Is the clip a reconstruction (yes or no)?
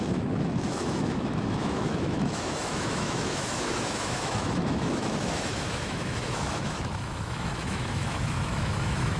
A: yes